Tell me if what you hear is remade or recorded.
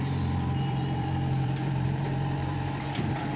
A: remade